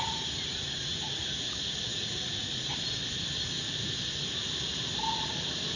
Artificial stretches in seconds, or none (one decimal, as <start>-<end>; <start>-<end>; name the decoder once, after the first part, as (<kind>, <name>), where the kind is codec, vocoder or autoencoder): 0.4-1.5 (vocoder, Vocos); 1.9-2.7